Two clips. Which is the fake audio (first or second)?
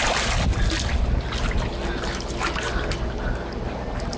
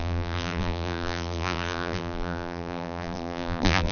second